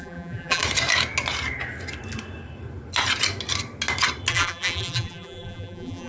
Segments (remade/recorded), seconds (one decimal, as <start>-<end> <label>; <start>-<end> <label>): 0.0-0.6 remade; 0.6-4.3 recorded; 4.3-6.1 remade